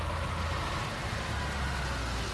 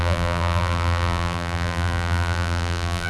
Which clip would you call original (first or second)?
first